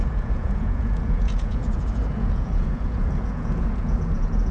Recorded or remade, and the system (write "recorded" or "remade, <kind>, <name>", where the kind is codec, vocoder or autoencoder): remade, vocoder, Vocos